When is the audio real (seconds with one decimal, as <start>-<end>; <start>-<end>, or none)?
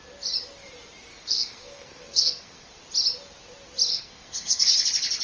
0.0-1.1; 2.8-3.9; 4.7-5.2